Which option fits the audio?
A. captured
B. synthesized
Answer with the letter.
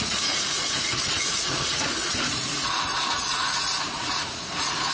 B